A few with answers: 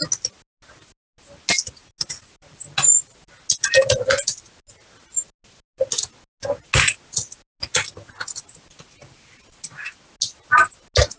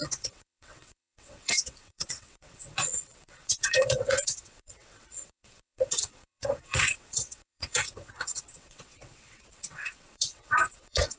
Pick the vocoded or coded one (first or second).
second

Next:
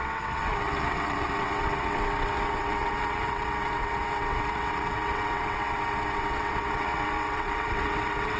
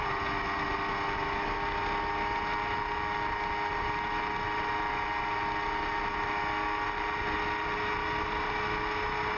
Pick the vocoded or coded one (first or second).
first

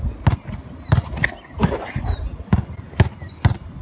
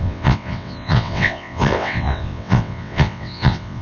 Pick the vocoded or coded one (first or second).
second